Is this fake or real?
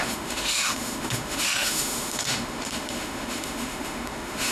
fake